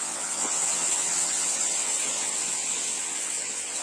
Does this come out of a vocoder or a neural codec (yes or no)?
yes